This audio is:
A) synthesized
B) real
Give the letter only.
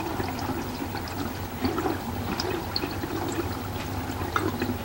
B